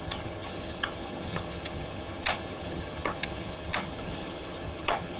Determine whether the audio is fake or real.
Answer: fake